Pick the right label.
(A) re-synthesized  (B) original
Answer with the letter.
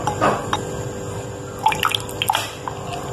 B